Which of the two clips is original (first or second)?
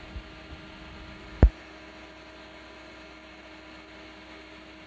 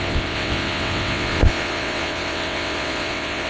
first